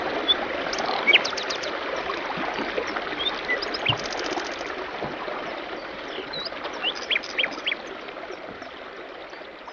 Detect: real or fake fake